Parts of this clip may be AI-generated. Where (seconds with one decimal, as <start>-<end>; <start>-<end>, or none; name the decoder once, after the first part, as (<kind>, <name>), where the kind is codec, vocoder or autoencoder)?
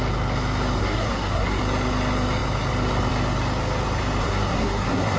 0.8-1.6 (codec, SNAC); 4.2-5.2